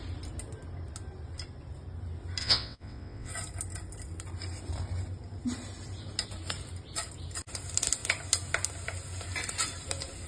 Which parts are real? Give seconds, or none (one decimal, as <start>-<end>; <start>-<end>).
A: 0.0-2.4; 3.3-10.3